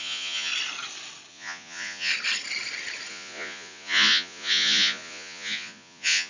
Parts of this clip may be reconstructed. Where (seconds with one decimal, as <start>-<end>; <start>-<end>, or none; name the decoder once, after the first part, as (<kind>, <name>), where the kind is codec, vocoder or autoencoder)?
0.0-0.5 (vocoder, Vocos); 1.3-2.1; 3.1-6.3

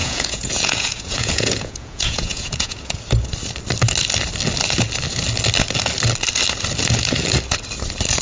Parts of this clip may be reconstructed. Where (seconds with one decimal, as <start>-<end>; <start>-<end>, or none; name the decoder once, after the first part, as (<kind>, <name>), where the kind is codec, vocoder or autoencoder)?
0.0-3.0 (vocoder, Vocos)

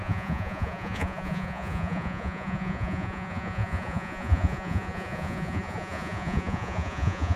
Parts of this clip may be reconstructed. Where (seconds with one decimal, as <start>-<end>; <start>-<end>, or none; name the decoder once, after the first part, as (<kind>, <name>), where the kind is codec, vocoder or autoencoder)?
0.0-7.4 (vocoder, Vocos)

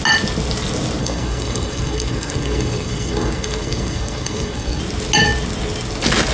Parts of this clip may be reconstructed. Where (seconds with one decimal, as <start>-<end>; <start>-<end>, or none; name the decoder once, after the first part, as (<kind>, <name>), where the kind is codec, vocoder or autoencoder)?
1.0-4.8 (codec, SNAC)

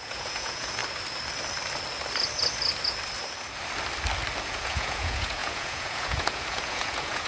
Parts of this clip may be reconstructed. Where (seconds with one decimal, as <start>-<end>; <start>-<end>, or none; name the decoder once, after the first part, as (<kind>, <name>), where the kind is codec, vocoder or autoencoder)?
0.0-0.8 (vocoder, Vocos); 4.4-7.3

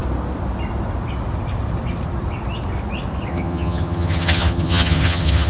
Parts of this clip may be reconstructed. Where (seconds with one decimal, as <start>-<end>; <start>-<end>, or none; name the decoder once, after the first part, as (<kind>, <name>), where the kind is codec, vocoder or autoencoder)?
3.3-5.5 (vocoder, HiFi-GAN)

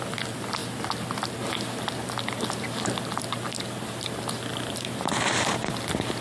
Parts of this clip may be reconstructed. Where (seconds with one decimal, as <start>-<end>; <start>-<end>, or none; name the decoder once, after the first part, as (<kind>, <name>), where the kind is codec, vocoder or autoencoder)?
4.5-5.1 (vocoder, BigVGAN v2)

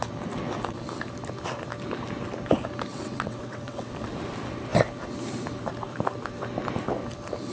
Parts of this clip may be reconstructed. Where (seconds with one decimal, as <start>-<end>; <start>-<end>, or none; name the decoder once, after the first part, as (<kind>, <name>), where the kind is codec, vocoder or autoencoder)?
2.9-3.9 (vocoder, WaveNeXt)